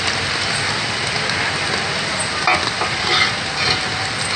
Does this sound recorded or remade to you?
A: recorded